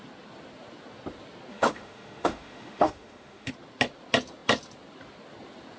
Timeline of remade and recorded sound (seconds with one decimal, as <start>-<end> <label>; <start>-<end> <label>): 0.0-1.5 recorded; 1.5-3.5 remade; 3.5-5.8 recorded